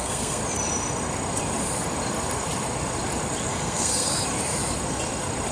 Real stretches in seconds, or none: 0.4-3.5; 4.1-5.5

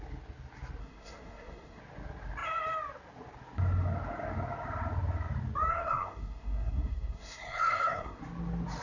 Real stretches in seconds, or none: 0.0-0.8; 1.8-5.7; 8.2-8.8

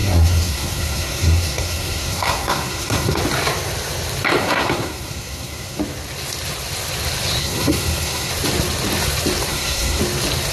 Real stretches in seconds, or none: 3.2-4.4; 5.8-7.4; 8.3-9.5; 10.0-10.5

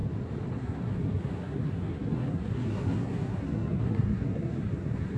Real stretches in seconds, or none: 0.0-0.6

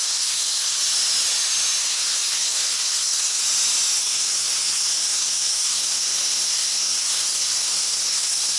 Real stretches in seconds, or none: 0.8-1.8; 3.4-4.0